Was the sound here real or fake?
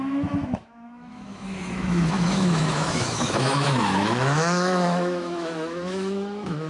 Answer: fake